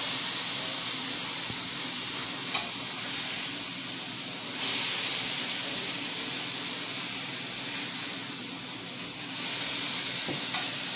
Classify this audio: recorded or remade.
recorded